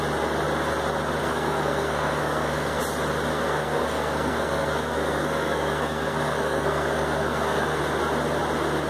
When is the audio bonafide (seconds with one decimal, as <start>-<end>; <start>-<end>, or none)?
0.0-1.2; 2.8-3.3; 7.8-8.9